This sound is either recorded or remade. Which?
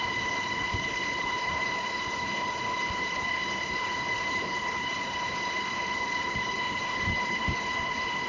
remade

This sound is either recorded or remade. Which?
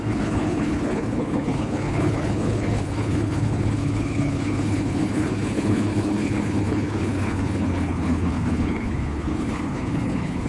remade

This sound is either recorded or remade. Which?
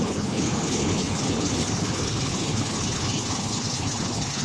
remade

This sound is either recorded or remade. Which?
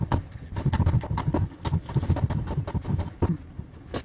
recorded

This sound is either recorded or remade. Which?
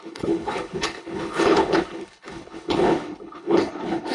remade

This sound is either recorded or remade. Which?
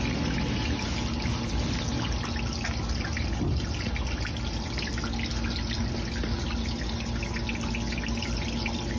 recorded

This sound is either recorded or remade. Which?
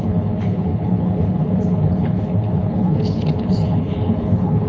remade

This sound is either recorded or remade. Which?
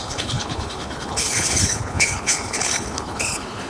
remade